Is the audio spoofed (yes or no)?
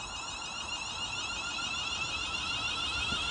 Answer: yes